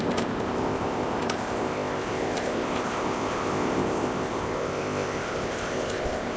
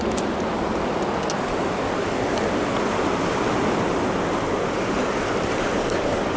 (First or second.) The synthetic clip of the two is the first